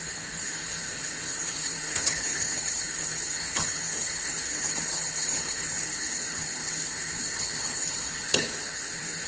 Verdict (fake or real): fake